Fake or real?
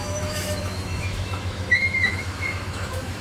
fake